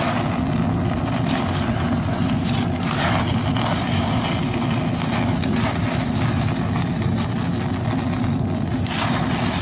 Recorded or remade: recorded